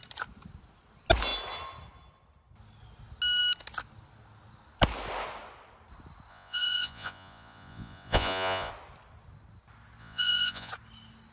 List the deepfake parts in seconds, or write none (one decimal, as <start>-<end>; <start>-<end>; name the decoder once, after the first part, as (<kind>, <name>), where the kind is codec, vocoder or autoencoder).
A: 6.3-8.7 (vocoder, Vocos); 10.0-10.7